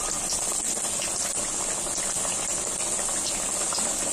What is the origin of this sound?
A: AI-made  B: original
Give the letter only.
B